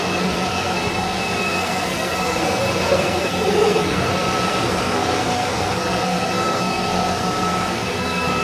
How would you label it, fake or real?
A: fake